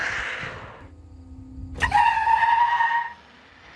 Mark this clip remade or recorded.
recorded